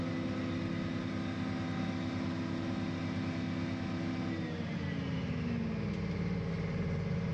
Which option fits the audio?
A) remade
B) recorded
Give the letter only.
B